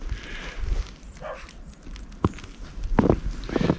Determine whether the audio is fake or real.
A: real